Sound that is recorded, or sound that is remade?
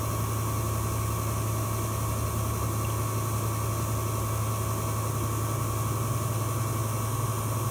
recorded